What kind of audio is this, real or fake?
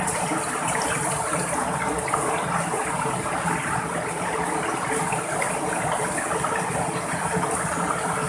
real